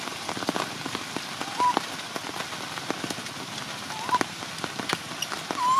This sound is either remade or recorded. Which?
recorded